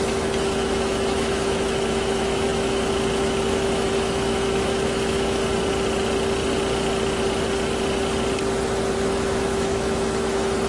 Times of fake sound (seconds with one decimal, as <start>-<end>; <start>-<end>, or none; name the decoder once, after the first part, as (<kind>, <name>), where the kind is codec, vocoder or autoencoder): 0.0-5.4 (autoencoder, DAC-VAE); 9.1-10.7